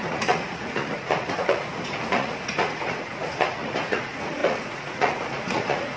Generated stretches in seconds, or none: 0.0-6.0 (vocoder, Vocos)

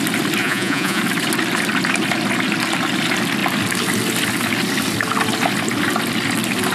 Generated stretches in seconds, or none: 0.4-1.0 (vocoder, Vocos)